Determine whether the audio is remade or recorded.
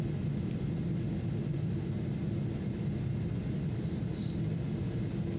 recorded